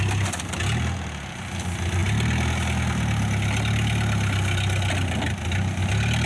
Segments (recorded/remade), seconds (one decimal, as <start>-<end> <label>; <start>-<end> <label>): 0.0-6.3 recorded